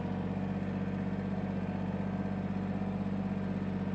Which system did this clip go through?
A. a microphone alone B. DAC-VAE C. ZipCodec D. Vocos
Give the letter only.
A